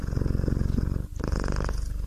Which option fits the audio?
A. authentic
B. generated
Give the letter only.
A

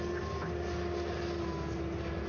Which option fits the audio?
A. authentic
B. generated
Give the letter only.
A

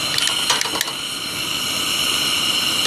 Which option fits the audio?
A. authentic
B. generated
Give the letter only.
A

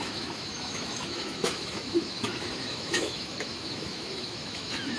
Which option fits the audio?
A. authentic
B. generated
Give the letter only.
B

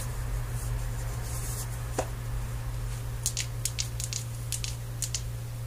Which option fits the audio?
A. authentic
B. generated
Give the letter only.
A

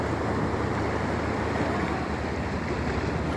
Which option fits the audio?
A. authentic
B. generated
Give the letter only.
A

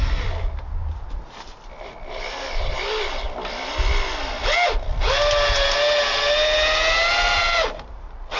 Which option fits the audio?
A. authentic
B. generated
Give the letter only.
A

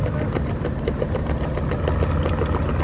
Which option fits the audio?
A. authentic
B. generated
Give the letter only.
A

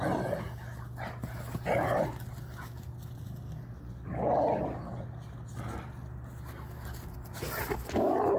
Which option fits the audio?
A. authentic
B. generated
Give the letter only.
A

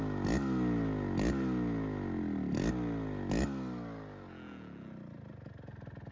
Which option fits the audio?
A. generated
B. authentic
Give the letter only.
B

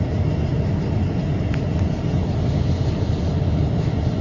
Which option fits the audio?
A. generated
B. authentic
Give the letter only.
B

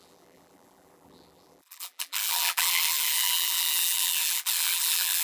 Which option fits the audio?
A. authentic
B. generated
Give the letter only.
B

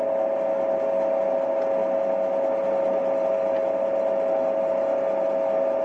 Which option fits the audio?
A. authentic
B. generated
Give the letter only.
A